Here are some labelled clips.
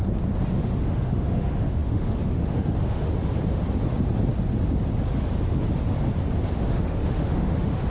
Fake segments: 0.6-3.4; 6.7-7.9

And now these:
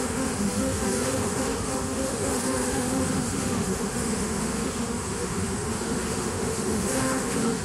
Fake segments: 0.0-7.6

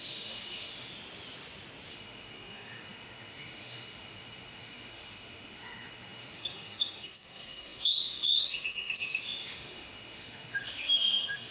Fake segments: 0.0-0.9; 1.9-11.5

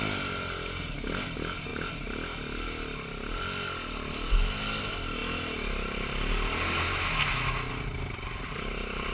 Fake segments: 6.9-7.7